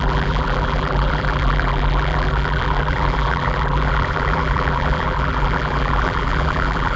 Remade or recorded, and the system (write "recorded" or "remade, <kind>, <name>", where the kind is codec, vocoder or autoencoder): remade, vocoder, BigVGAN v2